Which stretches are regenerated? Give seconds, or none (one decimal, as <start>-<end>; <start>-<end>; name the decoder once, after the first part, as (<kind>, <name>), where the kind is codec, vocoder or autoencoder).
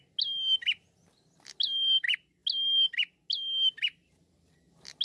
none